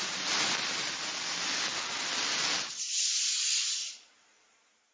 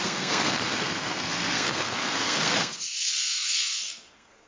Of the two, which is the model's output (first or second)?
second